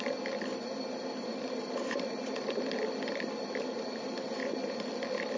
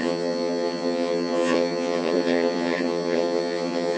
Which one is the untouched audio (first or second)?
first